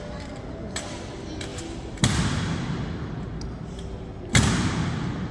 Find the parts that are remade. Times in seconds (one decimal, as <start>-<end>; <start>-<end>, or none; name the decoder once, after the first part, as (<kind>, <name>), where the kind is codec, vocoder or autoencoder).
none